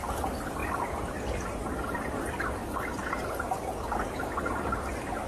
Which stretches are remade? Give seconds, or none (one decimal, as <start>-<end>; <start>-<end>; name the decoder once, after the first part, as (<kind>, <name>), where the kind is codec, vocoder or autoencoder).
none